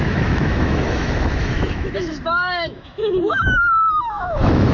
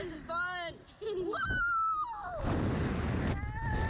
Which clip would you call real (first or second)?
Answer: second